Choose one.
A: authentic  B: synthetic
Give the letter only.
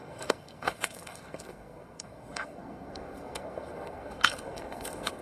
B